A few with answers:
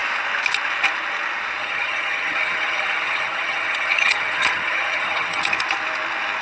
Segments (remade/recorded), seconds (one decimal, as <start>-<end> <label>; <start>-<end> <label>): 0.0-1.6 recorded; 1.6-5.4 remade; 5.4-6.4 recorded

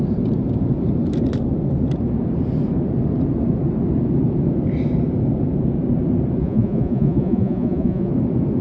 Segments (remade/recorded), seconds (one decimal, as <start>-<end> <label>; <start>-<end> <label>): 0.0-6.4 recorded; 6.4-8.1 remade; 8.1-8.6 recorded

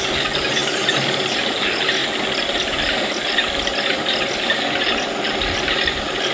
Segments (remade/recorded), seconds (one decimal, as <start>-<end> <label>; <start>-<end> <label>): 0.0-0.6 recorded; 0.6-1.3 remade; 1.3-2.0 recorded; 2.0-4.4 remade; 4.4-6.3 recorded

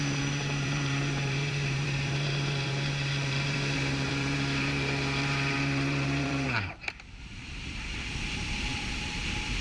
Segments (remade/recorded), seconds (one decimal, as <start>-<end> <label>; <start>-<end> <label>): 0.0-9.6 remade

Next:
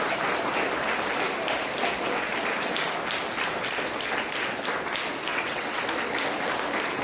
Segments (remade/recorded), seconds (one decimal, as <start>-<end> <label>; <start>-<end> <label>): 0.0-5.3 recorded; 5.3-5.8 remade; 5.8-7.0 recorded

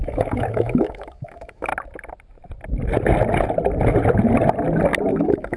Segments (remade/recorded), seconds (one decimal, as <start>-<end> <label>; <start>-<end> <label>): 0.0-1.7 remade; 1.7-5.1 recorded; 5.1-5.6 remade